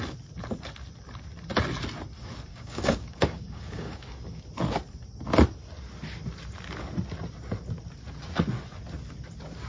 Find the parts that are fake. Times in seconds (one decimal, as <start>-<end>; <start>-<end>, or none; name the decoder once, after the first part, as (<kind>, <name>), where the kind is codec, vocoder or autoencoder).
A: 2.5-4.4 (codec, DAC)